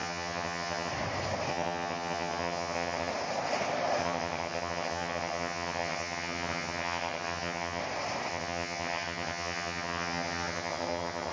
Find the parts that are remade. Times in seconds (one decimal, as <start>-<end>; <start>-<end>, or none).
0.0-0.9; 1.5-3.1; 4.0-7.8; 8.3-11.3